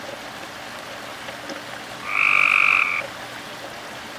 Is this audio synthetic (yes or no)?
no